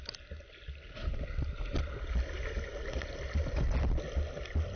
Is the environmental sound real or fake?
real